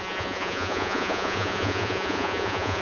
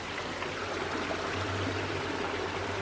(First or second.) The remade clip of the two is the first